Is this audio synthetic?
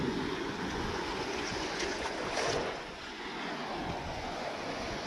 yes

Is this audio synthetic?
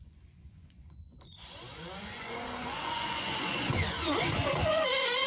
yes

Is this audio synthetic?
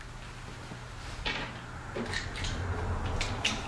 no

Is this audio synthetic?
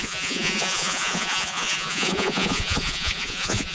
yes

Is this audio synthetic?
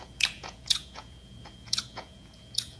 yes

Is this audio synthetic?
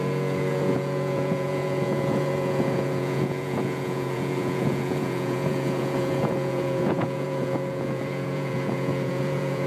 yes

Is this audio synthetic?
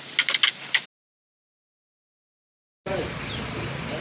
no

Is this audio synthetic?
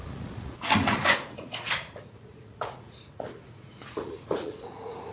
yes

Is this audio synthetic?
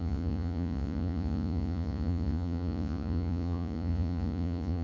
yes